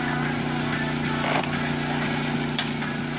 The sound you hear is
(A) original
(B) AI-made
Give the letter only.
A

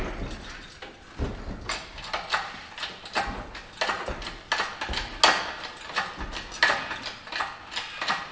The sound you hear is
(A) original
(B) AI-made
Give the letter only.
A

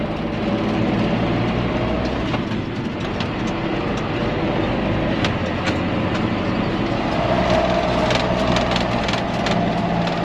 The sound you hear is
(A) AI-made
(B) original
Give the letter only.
B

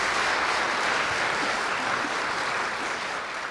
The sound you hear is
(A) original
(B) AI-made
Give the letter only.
B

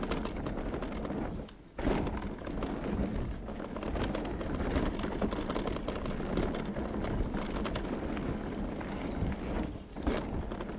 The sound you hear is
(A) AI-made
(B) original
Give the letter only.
B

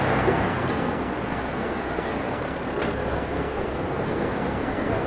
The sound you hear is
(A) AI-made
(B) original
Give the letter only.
A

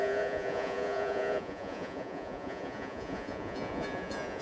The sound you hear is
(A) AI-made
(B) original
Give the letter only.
A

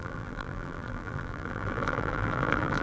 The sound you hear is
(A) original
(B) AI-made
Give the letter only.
B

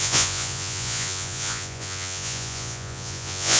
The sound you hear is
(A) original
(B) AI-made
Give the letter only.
B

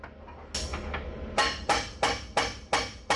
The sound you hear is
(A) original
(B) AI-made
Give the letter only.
A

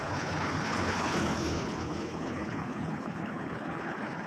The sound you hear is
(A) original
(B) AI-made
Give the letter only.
B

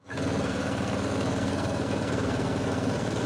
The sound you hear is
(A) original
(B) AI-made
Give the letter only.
B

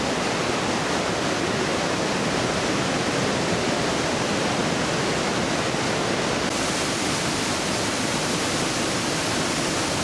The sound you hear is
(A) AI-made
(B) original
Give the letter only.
B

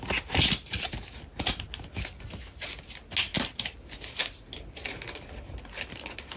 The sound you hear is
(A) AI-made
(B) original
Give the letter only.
B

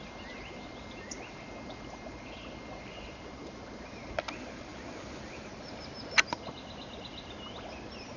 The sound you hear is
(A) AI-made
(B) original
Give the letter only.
B